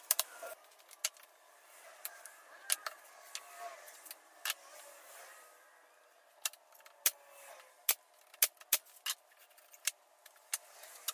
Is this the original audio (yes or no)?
yes